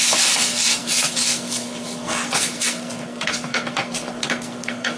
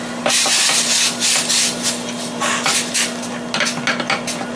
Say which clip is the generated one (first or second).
first